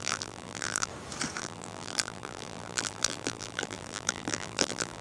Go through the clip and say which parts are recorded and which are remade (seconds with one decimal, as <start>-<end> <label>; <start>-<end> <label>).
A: 0.0-0.9 remade; 0.9-1.4 recorded; 1.4-5.0 remade